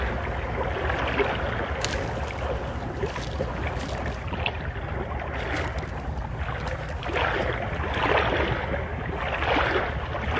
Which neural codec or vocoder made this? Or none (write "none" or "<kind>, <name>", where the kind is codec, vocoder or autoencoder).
none